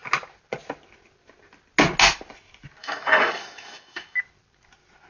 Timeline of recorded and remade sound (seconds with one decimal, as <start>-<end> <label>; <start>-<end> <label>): 0.0-2.8 recorded; 2.8-4.2 remade; 4.2-5.1 recorded